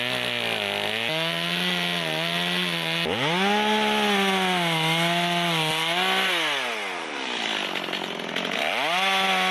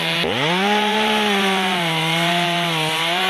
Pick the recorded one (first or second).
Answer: first